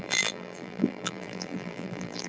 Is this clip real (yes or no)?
no